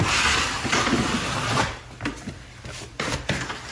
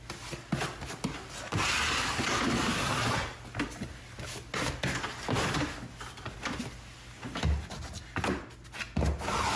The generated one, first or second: first